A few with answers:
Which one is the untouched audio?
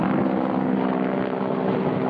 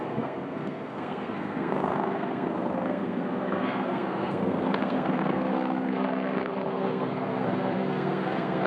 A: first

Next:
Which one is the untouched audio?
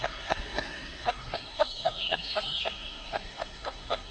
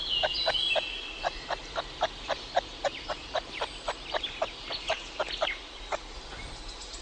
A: second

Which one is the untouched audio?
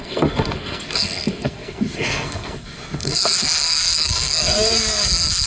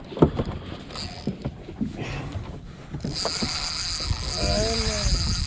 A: second